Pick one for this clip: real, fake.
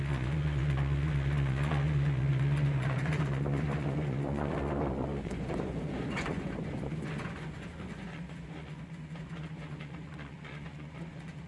fake